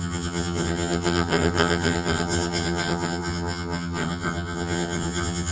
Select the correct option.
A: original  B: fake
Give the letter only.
B